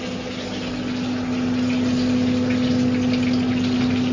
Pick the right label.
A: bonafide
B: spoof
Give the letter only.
A